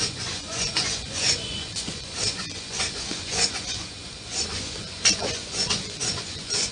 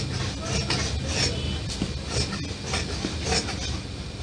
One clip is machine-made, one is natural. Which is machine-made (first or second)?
first